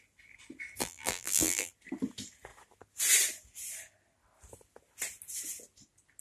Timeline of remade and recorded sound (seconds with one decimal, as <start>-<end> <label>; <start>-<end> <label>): 0.0-0.8 recorded; 0.8-1.7 remade; 1.7-6.2 recorded